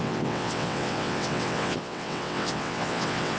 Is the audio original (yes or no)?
no